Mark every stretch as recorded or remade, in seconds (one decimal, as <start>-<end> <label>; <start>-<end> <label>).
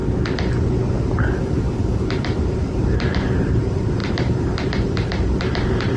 0.0-1.4 recorded; 1.4-6.0 remade